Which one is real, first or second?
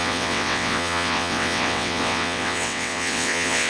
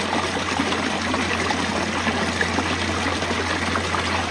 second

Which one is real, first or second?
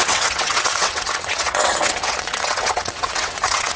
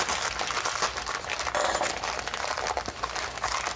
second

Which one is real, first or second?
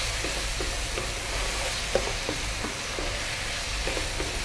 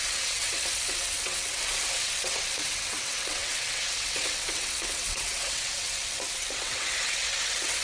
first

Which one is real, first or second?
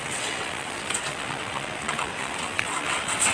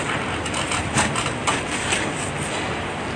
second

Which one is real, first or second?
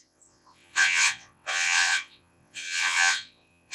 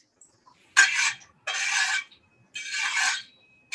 second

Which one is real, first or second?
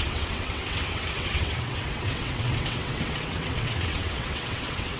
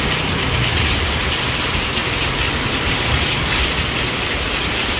second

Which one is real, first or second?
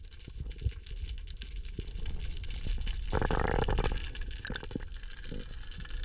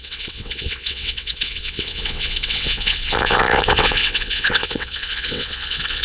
first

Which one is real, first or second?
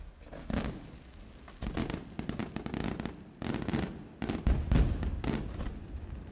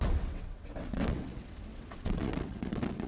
first